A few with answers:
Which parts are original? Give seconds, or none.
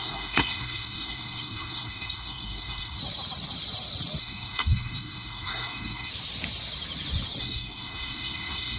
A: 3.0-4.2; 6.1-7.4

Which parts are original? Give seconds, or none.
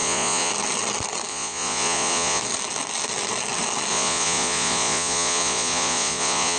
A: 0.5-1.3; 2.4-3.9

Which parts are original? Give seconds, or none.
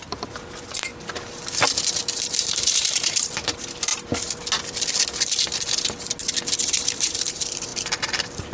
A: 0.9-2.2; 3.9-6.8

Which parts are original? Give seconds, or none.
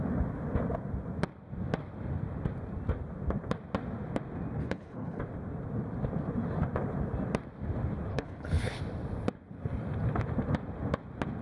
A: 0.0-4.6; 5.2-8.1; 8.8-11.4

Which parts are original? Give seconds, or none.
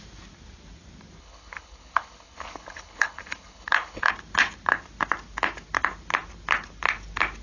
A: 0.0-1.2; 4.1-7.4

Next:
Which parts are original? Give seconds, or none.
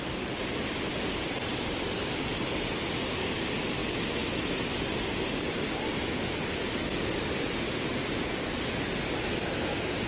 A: 0.0-10.1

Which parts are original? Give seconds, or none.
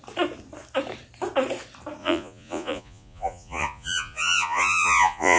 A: 0.0-2.0